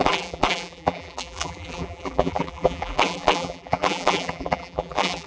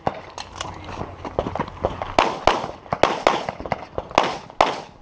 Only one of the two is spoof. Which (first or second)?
first